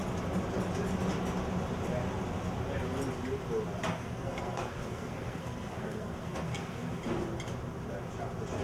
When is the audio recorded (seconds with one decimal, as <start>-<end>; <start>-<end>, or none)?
0.0-3.9; 7.0-8.6